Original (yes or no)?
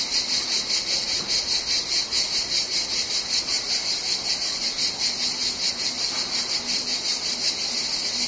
yes